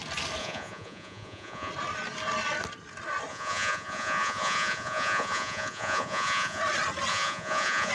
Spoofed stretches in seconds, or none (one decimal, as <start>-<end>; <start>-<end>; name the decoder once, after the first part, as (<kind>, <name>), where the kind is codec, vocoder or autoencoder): 0.4-1.7 (vocoder, Vocos); 3.3-6.6; 7.1-7.9